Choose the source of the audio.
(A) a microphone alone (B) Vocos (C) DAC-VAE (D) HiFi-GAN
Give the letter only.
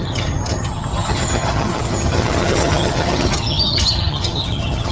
D